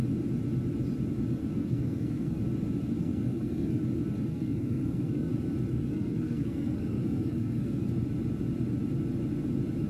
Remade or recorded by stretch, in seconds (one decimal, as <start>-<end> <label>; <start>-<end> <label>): 0.0-1.4 recorded; 1.4-2.4 remade; 2.4-3.0 recorded; 3.0-3.8 remade; 3.8-4.3 recorded; 4.3-5.3 remade; 5.3-5.7 recorded; 5.7-7.9 remade; 7.9-9.9 recorded